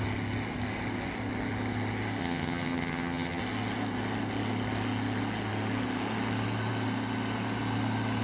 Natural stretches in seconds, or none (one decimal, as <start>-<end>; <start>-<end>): 0.0-2.2; 3.4-8.2